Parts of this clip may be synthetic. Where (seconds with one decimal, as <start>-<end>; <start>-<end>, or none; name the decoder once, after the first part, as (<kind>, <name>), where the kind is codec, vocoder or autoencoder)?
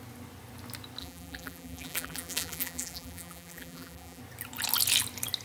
1.0-4.2 (vocoder, BigVGAN v2)